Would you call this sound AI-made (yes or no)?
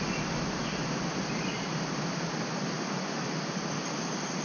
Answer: yes